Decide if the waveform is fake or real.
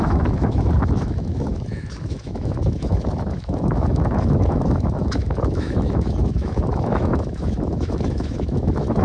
fake